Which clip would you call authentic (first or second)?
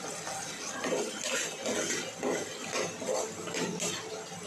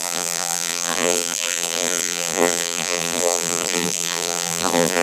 first